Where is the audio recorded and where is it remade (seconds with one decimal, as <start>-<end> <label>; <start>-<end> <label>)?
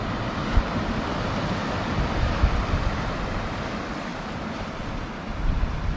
0.0-4.1 recorded; 4.1-4.8 remade; 4.8-6.0 recorded